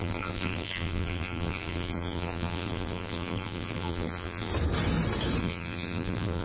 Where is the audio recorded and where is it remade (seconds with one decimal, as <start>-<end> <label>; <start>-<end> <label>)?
0.0-4.5 remade; 4.5-5.4 recorded; 5.4-6.4 remade